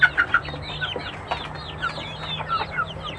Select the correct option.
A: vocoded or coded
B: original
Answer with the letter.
B